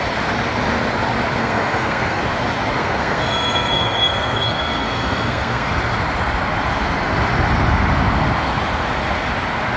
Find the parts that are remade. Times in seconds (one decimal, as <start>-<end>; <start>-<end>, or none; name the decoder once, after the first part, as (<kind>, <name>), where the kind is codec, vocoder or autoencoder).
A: 1.4-2.2 (codec, SNAC); 2.8-5.7